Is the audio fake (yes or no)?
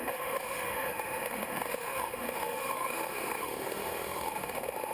yes